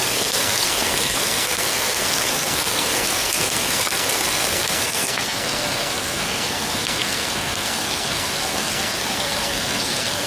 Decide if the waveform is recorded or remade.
remade